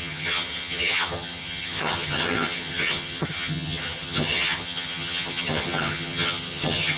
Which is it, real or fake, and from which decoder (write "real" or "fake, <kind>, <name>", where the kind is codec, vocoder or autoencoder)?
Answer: fake, vocoder, HiFi-GAN